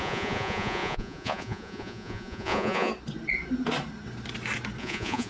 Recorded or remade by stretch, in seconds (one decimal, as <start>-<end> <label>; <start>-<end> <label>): 0.0-2.9 remade; 2.9-4.8 recorded; 4.8-5.3 remade